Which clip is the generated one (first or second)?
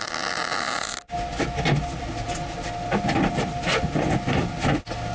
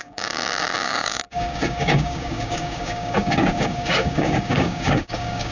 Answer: second